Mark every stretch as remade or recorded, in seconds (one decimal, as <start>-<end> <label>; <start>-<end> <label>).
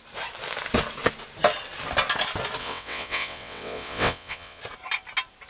0.0-2.6 recorded; 2.6-4.6 remade; 4.6-5.5 recorded